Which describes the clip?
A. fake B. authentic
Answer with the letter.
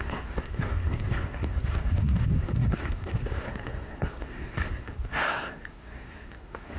A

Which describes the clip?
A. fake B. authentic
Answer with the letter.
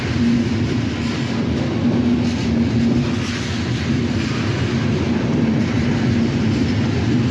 B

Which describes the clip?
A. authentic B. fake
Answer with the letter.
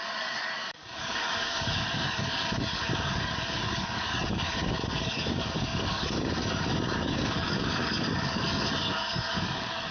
B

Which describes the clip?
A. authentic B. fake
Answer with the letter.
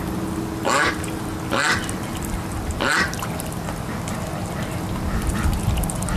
A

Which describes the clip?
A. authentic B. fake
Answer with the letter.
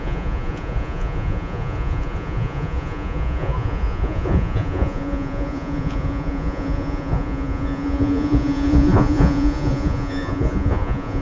B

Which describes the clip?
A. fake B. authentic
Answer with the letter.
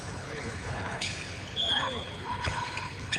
A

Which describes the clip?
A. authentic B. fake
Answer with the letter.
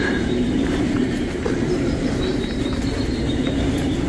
B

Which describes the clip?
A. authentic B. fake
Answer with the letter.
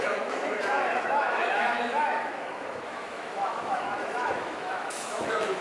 B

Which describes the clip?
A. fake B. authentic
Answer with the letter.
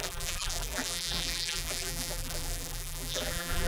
A